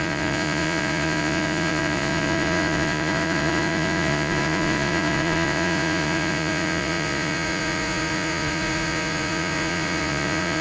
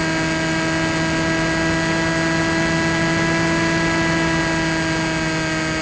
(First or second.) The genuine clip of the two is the second